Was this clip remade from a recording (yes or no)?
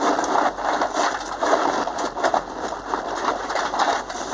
yes